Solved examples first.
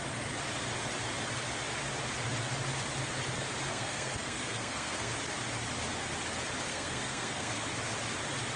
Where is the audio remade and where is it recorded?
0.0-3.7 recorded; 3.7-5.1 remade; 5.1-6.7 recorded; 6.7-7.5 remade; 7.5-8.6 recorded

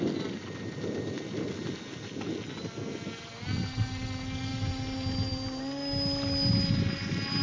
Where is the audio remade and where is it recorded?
0.0-4.5 recorded; 4.5-5.6 remade; 5.6-7.4 recorded

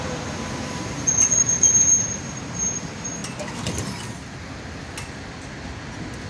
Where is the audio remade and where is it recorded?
0.0-3.2 remade; 3.2-6.3 recorded

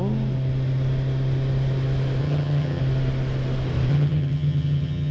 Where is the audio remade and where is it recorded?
0.0-2.2 recorded; 2.2-2.8 remade; 2.8-3.9 recorded; 3.9-5.1 remade

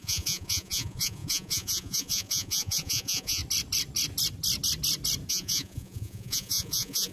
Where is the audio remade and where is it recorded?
0.0-3.4 remade; 3.4-5.3 recorded; 5.3-7.1 remade